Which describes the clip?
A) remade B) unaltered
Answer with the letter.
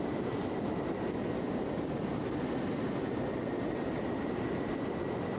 A